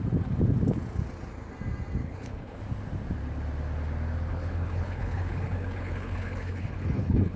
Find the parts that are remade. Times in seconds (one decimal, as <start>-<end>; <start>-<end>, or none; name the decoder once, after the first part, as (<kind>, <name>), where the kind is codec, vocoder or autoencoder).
2.0-2.6 (codec, HILCodec); 4.3-7.4